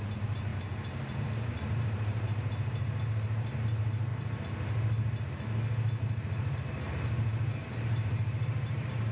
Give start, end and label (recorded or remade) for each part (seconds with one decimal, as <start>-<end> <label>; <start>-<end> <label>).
0.0-4.1 remade; 4.1-6.0 recorded; 6.0-9.1 remade